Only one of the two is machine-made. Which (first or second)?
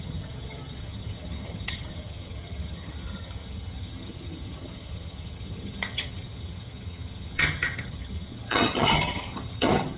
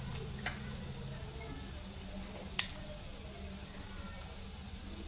first